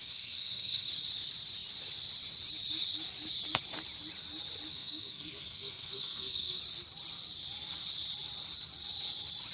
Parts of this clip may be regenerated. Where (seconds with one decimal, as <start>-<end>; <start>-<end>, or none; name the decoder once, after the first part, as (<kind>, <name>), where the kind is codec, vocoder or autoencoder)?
0.0-0.9 (codec, SNAC); 4.7-6.6